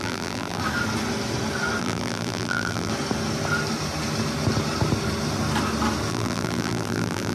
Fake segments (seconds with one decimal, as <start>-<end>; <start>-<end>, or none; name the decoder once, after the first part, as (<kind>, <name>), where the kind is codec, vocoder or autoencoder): 0.0-0.6 (vocoder, BigVGAN v2); 1.8-2.9; 6.1-7.3